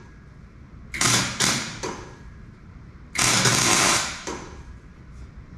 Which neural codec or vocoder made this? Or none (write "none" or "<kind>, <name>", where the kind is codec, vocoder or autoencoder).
vocoder, BigVGAN v2